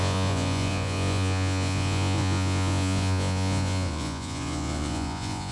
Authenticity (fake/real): fake